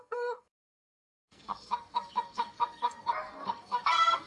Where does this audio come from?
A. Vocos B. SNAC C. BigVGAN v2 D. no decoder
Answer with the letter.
B